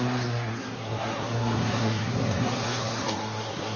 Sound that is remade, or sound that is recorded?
remade